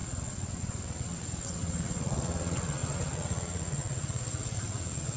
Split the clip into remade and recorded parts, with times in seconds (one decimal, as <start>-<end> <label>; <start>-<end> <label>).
0.0-5.2 remade